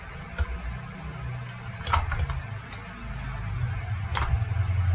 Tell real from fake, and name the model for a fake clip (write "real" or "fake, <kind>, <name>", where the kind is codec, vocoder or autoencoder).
real